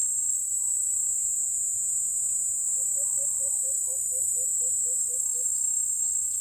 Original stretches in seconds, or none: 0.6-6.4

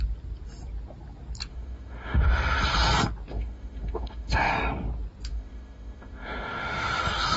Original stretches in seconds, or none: 0.0-1.5; 2.2-3.3; 4.5-5.3; 7.0-7.4

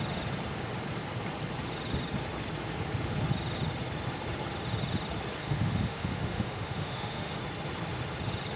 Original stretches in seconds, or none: 0.0-5.4; 7.4-8.6

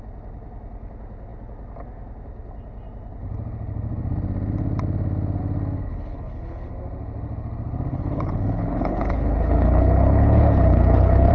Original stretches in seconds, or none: 0.0-5.9; 6.7-7.9